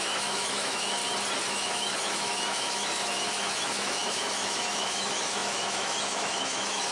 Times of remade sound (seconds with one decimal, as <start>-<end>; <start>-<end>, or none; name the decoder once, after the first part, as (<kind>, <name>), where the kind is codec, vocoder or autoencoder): 0.0-1.0 (autoencoder, DAC-VAE); 1.5-6.9